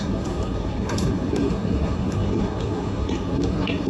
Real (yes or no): no